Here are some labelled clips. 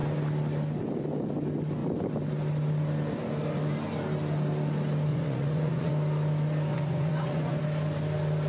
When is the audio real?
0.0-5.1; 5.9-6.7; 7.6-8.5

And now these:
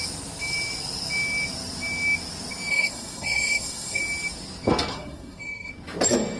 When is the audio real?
0.0-2.7; 4.0-4.9; 5.7-6.4

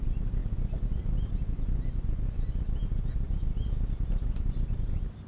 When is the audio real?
0.0-5.3

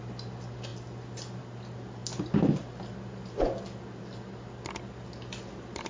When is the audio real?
0.0-5.9